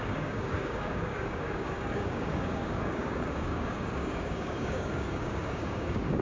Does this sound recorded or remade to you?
remade